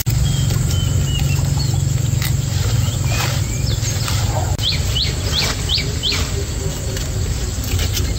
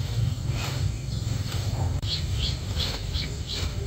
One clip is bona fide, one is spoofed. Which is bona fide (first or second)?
first